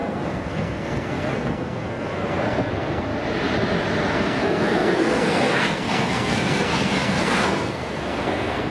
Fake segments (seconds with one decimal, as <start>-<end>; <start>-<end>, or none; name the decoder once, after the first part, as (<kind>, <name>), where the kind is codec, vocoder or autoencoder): 0.0-3.1 (codec, SNAC); 4.0-8.7